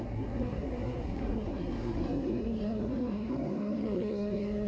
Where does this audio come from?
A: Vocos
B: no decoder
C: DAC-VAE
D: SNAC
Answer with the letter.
D